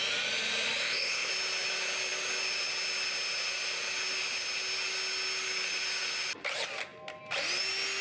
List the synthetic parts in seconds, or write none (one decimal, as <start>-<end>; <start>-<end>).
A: 0.8-1.3

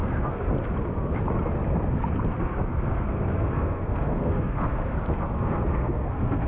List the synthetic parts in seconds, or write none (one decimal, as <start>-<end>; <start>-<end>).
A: 0.0-0.5; 2.3-6.5

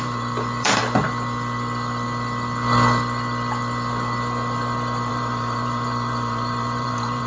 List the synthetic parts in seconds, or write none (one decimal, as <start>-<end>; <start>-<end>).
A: 0.0-0.8; 5.1-7.3

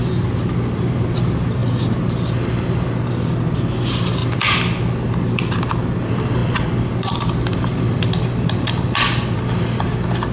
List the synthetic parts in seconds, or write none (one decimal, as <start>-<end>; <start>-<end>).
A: none

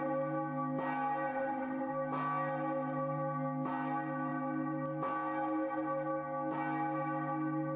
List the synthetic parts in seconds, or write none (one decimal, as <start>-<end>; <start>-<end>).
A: 1.3-1.9

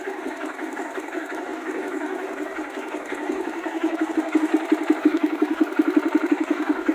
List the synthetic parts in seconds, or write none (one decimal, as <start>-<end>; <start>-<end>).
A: 0.0-4.5; 5.0-5.6; 6.3-6.9